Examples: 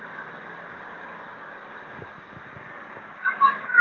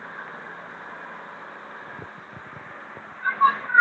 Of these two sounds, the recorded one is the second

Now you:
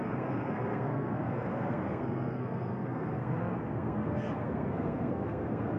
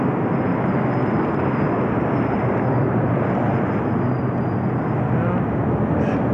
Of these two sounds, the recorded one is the second